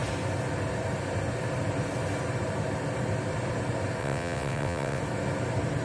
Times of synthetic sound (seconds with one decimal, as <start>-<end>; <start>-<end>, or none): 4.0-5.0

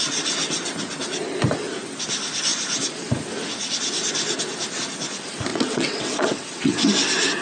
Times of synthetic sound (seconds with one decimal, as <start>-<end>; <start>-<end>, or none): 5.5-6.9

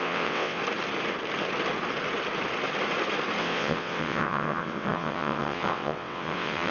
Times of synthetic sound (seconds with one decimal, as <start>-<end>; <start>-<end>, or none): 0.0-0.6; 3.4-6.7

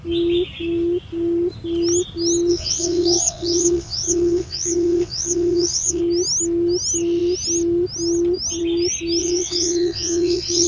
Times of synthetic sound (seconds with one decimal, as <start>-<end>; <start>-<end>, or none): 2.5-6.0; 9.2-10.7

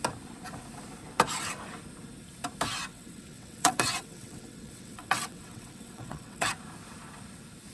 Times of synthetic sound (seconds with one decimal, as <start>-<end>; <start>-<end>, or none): 2.9-6.5